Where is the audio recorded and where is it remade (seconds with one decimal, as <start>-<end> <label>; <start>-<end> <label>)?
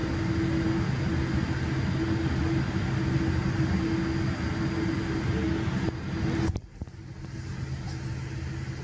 0.0-8.8 recorded